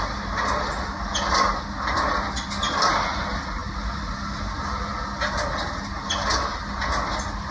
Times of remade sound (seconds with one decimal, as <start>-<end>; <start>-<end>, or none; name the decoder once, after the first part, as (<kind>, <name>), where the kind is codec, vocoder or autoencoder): none